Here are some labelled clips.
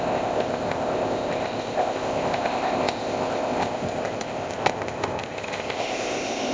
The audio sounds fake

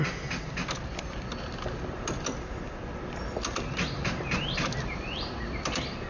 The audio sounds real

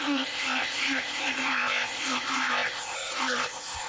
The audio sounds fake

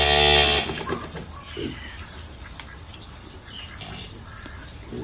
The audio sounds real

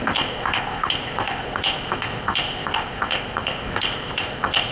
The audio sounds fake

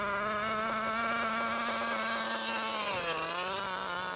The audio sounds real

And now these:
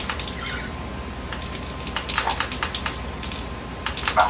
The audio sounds real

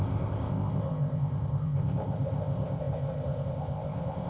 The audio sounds fake